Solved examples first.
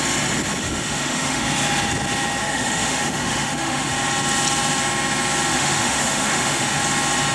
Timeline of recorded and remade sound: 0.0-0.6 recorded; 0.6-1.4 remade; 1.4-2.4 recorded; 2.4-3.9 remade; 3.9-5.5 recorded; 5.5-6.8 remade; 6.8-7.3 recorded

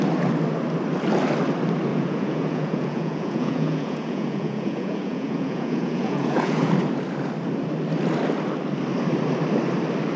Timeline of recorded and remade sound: 0.0-1.9 recorded; 1.9-6.7 remade; 6.7-10.2 recorded

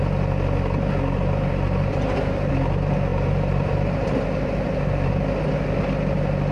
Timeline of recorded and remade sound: 0.0-1.9 recorded; 1.9-2.5 remade; 2.5-3.1 recorded; 3.1-5.1 remade; 5.1-6.5 recorded